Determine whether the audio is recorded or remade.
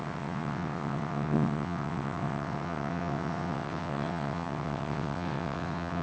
remade